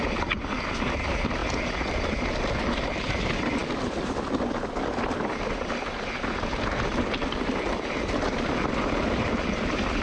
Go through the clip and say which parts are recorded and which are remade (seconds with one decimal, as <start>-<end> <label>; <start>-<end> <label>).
0.0-1.4 recorded; 1.4-2.5 remade; 2.5-10.0 recorded